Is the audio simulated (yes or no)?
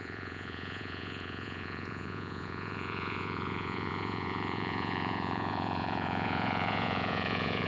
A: yes